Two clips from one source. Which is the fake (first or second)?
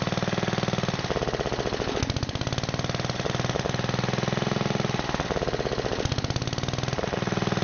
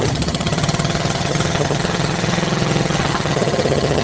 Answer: second